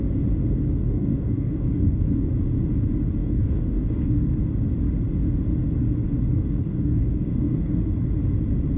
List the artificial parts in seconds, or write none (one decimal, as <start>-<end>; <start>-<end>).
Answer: 0.8-2.3; 3.2-4.3; 6.3-7.8